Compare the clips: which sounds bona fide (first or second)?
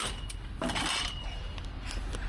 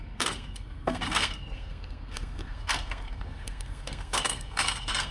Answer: first